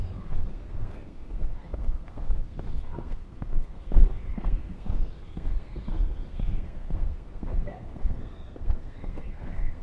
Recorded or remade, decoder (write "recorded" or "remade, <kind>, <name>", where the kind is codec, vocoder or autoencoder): remade, codec, SNAC